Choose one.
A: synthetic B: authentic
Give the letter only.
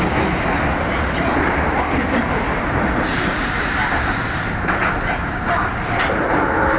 B